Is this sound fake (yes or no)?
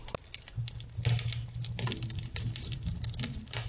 no